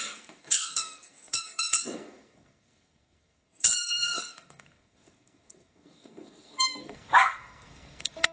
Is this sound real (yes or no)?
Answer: no